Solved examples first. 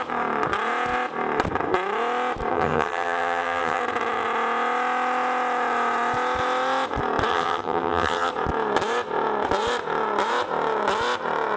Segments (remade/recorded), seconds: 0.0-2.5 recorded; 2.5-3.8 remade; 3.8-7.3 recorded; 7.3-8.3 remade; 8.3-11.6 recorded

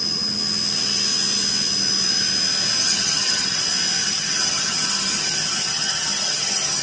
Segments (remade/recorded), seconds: 0.0-2.8 recorded; 2.8-3.6 remade; 3.6-4.0 recorded; 4.0-6.8 remade